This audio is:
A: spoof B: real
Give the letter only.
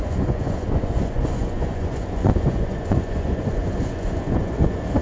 A